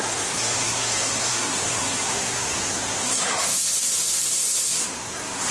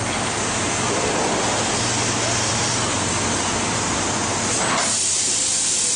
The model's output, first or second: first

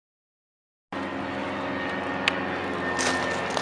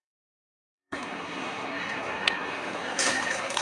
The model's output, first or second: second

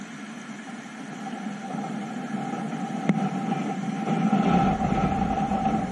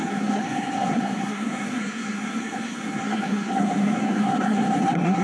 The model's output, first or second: second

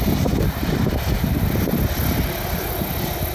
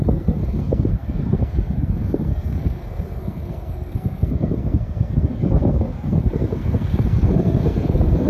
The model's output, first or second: second